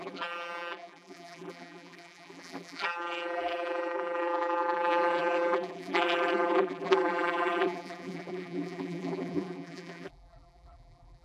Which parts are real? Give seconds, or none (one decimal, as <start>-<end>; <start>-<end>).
none